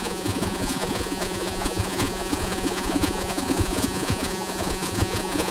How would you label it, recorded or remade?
remade